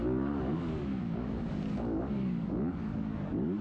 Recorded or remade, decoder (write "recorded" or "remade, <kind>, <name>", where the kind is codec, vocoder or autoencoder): remade, codec, DAC